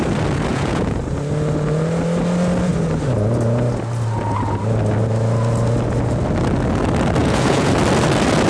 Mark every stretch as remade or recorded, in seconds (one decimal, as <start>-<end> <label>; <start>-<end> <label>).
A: 0.0-0.5 recorded; 0.5-1.0 remade; 1.0-7.2 recorded; 7.2-7.7 remade; 7.7-8.5 recorded